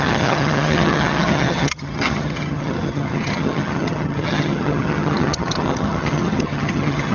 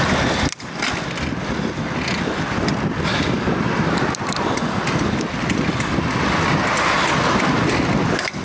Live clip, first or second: second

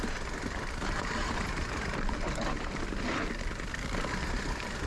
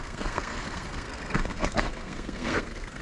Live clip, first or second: first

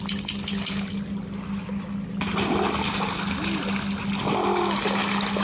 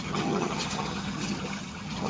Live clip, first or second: first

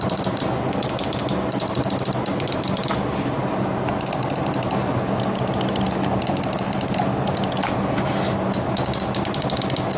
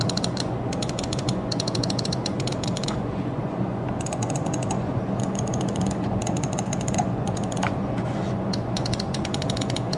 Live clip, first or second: first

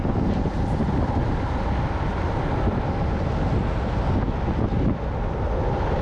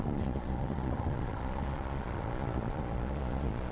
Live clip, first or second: first